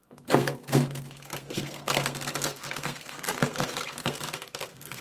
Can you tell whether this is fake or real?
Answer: fake